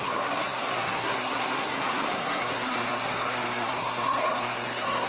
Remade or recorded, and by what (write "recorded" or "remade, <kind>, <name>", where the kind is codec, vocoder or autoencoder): remade, codec, SNAC